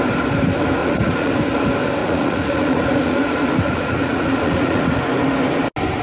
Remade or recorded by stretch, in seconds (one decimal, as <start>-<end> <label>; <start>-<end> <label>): 0.0-0.8 recorded; 0.8-1.3 remade; 1.3-2.0 recorded; 2.0-5.0 remade; 5.0-6.0 recorded